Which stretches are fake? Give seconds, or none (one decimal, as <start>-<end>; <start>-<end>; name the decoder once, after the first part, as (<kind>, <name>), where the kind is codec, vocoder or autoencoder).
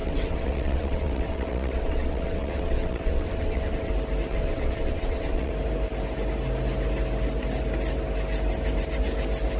0.0-3.9 (vocoder, WaveNeXt); 4.3-5.5